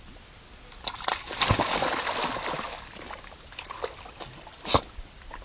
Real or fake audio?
real